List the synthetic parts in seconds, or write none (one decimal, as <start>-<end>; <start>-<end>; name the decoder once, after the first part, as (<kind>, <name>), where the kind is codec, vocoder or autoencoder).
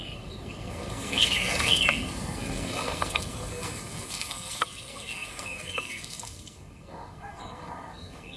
0.0-8.4 (codec, SNAC)